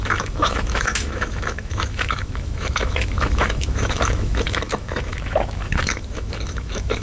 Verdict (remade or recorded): remade